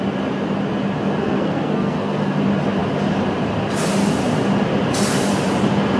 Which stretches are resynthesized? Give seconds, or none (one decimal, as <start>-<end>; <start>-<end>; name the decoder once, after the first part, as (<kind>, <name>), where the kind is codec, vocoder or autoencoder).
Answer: 1.2-2.3 (codec, SNAC)